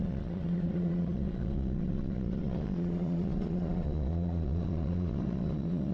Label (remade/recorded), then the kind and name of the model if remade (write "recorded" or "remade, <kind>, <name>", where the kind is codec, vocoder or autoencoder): remade, vocoder, Vocos